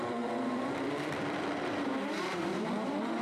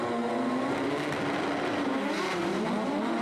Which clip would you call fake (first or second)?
first